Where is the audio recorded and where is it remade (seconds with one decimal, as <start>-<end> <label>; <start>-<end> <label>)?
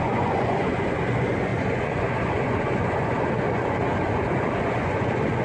0.0-5.4 remade